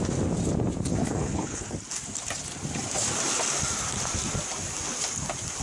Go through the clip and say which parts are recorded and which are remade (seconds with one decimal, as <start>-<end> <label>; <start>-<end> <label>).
0.0-0.9 recorded; 0.9-1.7 remade; 1.7-5.6 recorded